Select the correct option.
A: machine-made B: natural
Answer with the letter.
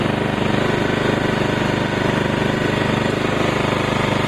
B